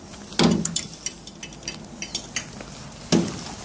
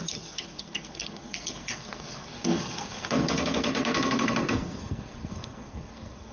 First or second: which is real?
first